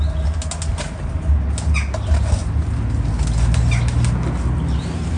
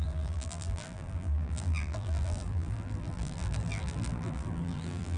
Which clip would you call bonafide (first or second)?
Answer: first